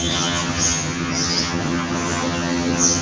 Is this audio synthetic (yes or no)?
yes